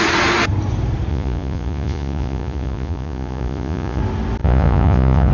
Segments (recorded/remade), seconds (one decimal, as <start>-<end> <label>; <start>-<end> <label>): 0.0-1.1 recorded; 1.1-4.0 remade; 4.0-4.4 recorded; 4.4-5.3 remade